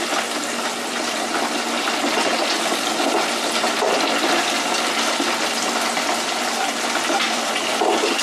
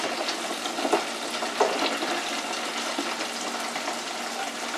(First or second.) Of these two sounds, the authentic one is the second